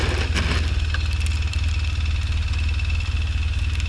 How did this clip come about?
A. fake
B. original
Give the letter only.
B